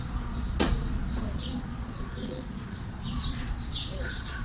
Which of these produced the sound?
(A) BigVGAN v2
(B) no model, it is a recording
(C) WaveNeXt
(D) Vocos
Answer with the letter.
D